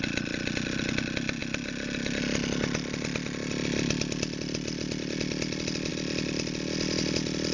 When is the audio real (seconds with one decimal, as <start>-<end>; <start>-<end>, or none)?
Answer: 0.0-7.5

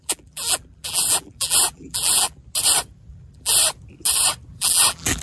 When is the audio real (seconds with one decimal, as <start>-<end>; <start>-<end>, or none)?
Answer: 2.4-3.1; 3.6-4.5

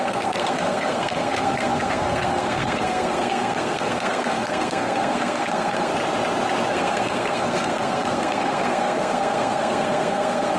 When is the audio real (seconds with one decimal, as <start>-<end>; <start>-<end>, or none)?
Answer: 5.9-6.7

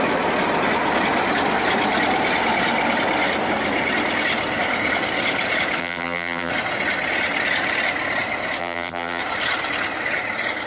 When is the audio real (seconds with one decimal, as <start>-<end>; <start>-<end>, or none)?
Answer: 0.0-5.8; 6.5-8.6; 9.2-10.7

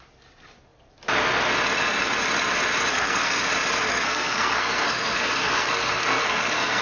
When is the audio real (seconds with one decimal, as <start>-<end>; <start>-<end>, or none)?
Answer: 0.0-2.9; 3.4-3.9

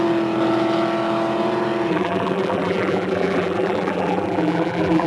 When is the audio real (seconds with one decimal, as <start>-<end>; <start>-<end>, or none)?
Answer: 0.0-1.9

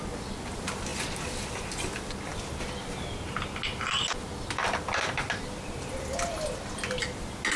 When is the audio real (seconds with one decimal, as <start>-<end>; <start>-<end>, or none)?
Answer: 0.0-7.6